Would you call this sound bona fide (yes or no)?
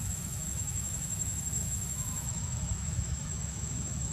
no